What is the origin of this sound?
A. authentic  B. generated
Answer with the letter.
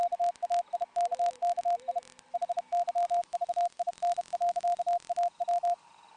A